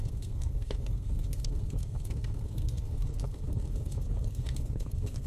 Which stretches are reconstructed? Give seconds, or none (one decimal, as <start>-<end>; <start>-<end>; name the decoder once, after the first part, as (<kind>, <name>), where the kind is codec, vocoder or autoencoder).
0.0-5.3 (codec, SNAC)